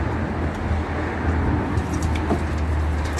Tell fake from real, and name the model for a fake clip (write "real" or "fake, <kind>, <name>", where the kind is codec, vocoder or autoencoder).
real